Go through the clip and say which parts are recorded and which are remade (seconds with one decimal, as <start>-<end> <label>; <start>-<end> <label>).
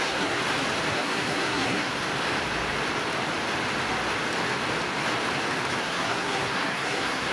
0.0-0.4 remade; 0.4-0.9 recorded; 0.9-2.0 remade; 2.0-5.8 recorded; 5.8-7.3 remade